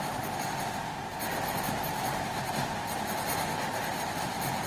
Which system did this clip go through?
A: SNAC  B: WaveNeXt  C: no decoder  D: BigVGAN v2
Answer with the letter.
D